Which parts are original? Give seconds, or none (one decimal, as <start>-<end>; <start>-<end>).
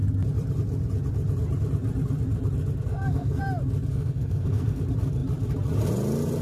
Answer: 0.0-2.9; 3.4-3.9; 4.8-6.4